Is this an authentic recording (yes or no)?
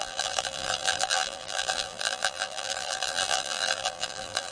no